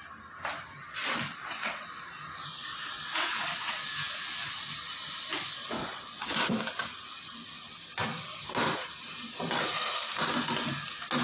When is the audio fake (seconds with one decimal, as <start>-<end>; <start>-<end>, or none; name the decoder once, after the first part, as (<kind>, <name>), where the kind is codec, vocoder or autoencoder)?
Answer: 1.4-2.0 (vocoder, WaveNeXt); 2.7-3.9; 5.8-6.6

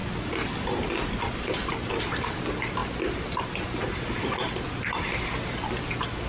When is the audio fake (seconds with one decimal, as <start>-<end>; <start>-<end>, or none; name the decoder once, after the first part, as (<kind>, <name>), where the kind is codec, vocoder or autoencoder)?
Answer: none

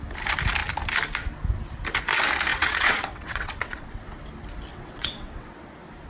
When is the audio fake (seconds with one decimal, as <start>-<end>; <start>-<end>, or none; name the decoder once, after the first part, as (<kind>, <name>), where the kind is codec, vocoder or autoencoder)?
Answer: 2.5-4.0 (vocoder, WaveNeXt); 4.7-5.5